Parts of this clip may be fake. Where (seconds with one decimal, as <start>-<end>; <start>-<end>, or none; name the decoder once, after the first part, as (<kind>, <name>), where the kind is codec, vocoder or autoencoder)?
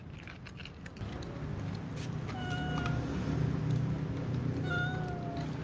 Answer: none